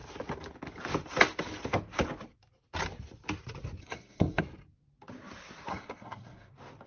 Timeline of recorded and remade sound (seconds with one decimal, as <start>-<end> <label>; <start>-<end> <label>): 0.0-3.8 recorded; 3.8-4.4 remade; 4.4-5.7 recorded; 5.7-6.5 remade; 6.5-6.9 recorded